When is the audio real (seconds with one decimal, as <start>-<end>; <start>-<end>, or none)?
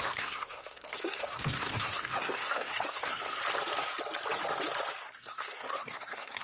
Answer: 3.4-5.0